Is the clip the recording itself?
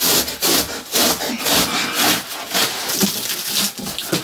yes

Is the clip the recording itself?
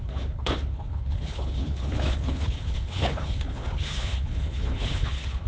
no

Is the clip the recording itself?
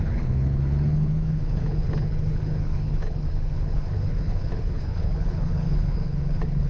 no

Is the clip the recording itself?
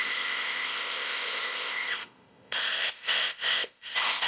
no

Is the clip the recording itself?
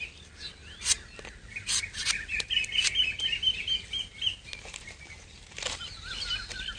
yes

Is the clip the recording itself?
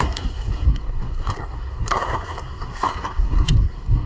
no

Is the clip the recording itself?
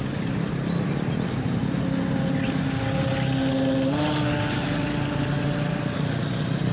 yes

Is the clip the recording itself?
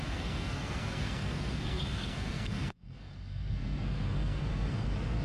no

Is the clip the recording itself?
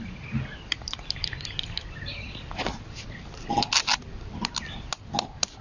yes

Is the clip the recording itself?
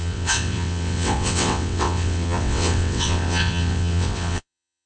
no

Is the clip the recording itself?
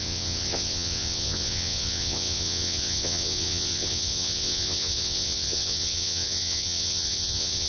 no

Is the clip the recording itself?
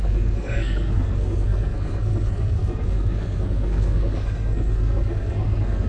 no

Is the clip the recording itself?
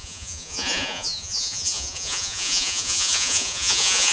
no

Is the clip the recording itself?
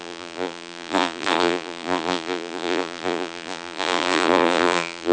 no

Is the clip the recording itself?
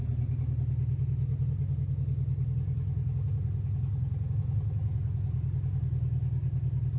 yes